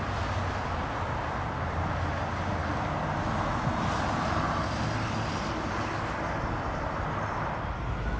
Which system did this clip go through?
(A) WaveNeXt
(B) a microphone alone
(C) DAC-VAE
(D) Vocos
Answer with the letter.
B